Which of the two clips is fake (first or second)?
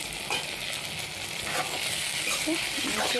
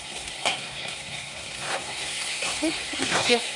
second